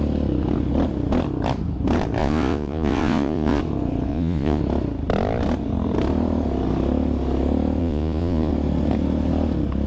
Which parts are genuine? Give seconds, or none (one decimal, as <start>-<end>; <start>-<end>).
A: 0.0-2.2; 3.6-4.1; 4.6-7.8; 8.5-9.9